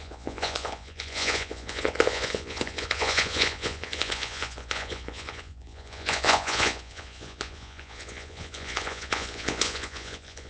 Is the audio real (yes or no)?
no